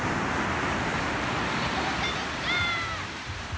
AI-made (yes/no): yes